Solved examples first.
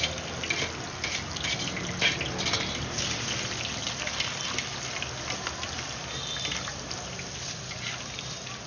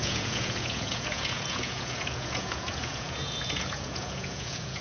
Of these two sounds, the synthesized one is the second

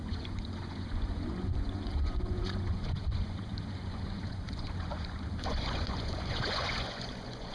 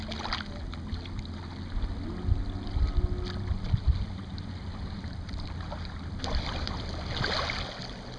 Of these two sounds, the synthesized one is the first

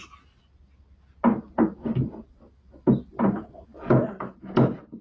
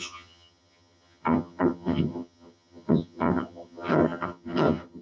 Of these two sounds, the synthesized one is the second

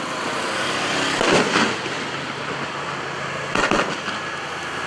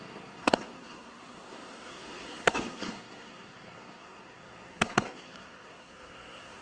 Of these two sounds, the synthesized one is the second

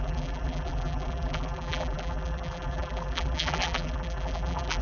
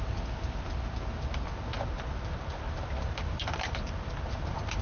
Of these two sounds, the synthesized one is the first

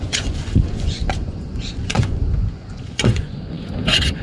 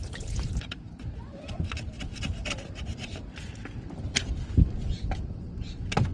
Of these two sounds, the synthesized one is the first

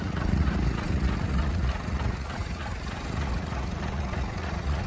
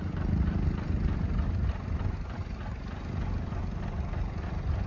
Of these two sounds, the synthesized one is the first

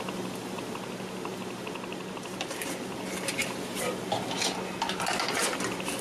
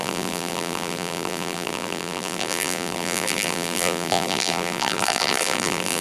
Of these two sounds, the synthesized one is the second